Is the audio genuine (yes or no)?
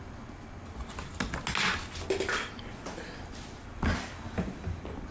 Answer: yes